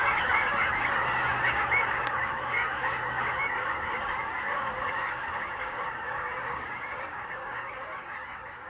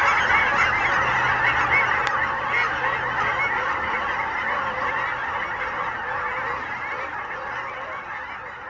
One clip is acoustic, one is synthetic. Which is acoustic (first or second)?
second